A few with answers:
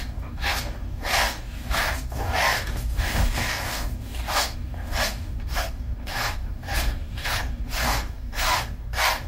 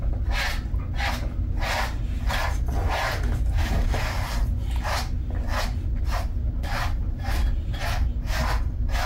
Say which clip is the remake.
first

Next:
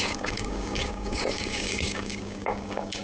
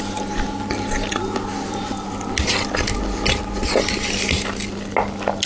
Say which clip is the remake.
first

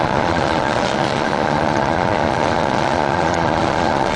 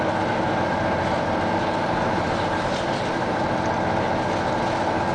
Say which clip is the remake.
first